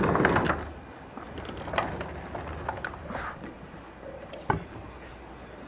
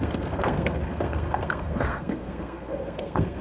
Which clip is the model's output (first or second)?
second